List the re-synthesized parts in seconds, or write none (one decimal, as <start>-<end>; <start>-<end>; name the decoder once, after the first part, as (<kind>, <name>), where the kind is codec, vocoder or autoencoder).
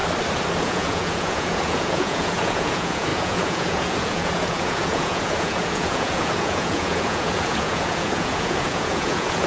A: 0.6-9.5 (vocoder, Vocos)